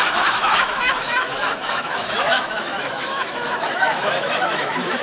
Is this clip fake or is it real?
fake